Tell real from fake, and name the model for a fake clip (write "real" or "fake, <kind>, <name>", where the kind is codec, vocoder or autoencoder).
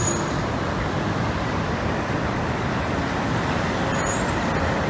real